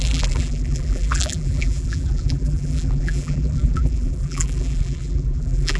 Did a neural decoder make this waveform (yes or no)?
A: yes